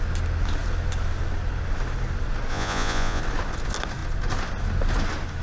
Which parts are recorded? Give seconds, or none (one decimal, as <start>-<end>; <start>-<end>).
0.0-2.5; 3.2-5.4